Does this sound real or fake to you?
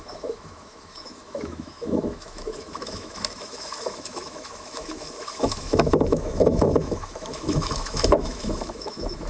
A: fake